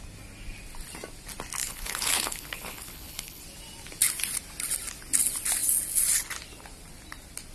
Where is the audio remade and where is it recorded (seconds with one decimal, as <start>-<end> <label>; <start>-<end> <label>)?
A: 0.0-1.6 recorded; 1.6-3.4 remade; 3.4-7.5 recorded

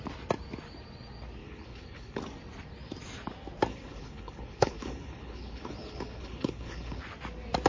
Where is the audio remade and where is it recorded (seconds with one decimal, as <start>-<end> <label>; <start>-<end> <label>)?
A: 0.0-1.4 recorded; 1.4-2.2 remade; 2.2-3.7 recorded; 3.7-7.0 remade; 7.0-7.7 recorded

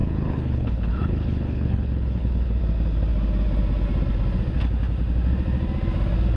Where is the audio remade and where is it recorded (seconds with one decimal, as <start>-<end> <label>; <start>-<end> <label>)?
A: 0.0-2.6 remade; 2.6-6.4 recorded

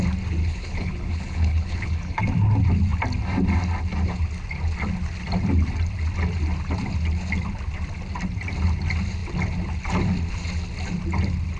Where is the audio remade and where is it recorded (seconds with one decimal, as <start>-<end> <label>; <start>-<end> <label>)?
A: 0.0-0.4 recorded; 0.4-2.2 remade; 2.2-11.6 recorded